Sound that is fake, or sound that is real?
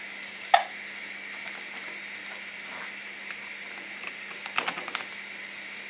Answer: real